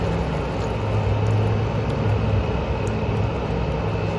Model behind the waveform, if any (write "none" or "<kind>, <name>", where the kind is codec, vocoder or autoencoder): none